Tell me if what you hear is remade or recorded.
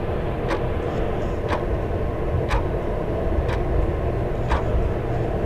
recorded